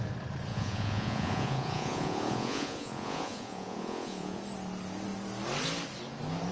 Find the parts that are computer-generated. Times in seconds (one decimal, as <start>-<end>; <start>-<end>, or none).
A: 0.5-4.4